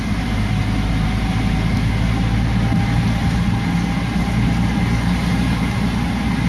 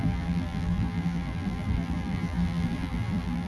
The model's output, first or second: second